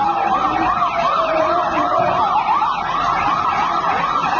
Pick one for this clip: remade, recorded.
recorded